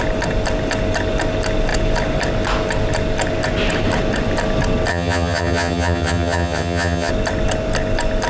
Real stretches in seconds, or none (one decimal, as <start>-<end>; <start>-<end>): 0.0-4.9; 7.1-8.3

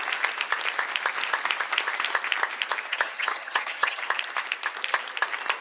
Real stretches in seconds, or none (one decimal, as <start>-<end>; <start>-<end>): 0.0-2.9; 4.0-5.6

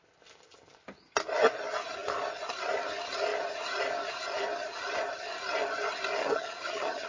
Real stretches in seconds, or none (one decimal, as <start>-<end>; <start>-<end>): 0.0-6.2

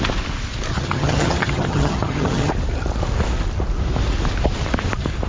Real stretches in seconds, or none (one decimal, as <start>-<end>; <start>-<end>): 0.0-0.7; 2.5-5.3

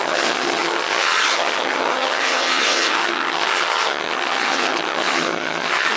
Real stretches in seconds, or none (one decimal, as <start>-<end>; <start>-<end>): none

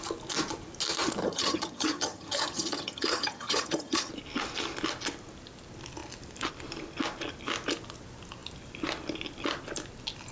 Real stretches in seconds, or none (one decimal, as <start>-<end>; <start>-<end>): 0.0-1.2; 4.1-10.3